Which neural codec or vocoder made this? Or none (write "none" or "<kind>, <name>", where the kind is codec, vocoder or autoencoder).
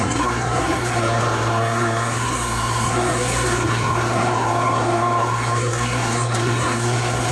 codec, SNAC